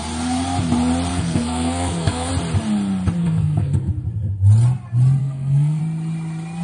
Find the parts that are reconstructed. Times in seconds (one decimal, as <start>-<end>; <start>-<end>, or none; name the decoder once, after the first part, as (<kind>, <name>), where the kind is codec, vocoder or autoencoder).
1.1-2.3 (codec, SNAC); 3.2-3.9; 5.2-5.8